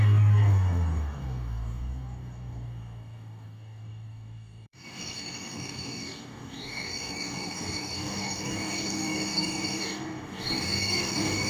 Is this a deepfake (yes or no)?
yes